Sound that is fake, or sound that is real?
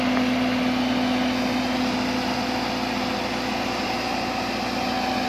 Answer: real